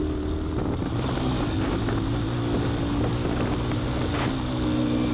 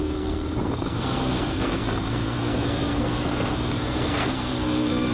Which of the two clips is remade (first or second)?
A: second